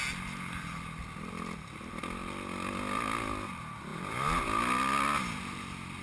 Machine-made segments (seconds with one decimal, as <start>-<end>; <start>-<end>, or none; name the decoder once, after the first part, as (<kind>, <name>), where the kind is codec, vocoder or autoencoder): none